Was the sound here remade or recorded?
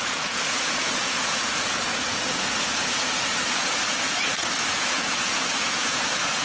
remade